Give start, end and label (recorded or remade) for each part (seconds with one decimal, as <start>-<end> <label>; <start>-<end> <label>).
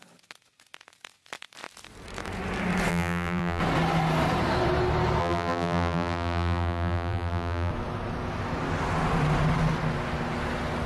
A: 0.0-2.9 recorded; 2.9-3.6 remade; 3.6-5.2 recorded; 5.2-7.7 remade; 7.7-10.9 recorded